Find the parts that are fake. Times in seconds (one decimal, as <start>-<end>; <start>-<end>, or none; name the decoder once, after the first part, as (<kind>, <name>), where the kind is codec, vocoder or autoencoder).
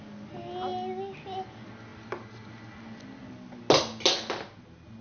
none